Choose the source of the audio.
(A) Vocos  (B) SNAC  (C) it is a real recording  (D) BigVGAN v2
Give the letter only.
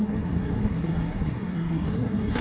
B